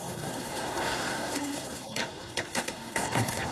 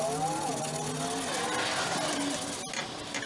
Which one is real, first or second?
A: second